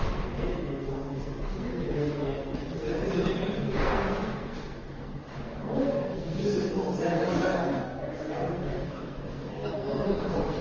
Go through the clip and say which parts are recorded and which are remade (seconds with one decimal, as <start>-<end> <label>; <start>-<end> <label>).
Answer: 0.0-10.6 remade